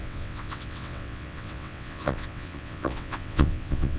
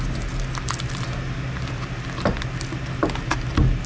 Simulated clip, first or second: first